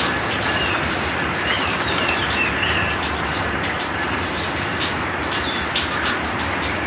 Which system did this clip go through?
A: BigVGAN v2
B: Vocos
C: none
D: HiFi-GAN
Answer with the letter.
A